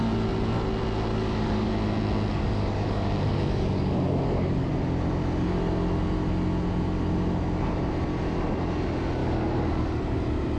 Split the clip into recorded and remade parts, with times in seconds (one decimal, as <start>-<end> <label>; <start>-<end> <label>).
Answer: 0.0-1.1 recorded; 1.1-1.7 remade; 1.7-2.3 recorded; 2.3-4.7 remade; 4.7-9.2 recorded; 9.2-10.2 remade; 10.2-10.6 recorded